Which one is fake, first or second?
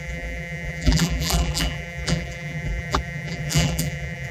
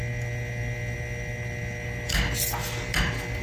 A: first